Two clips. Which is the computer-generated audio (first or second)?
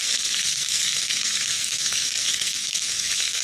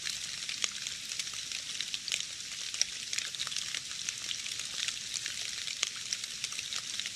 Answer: first